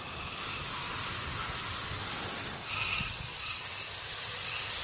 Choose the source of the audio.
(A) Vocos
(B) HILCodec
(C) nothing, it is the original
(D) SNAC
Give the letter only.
C